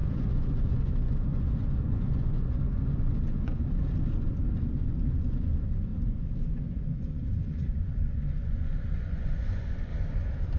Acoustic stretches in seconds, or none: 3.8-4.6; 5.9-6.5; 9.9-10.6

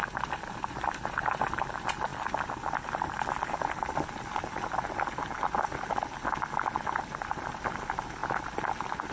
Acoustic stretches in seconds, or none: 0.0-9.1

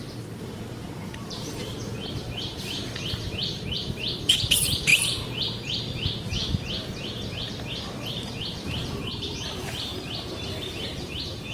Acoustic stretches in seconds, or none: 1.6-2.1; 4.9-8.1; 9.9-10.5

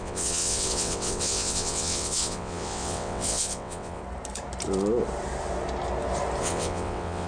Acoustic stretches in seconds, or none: 4.0-6.4

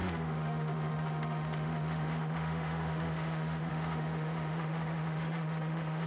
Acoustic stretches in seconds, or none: none

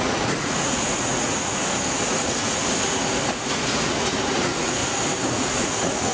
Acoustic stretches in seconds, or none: 1.6-2.1; 2.6-3.3; 4.8-5.3